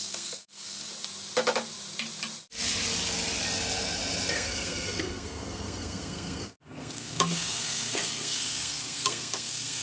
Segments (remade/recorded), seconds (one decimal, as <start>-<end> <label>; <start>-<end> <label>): 0.0-0.9 remade; 0.9-4.3 recorded; 4.3-9.8 remade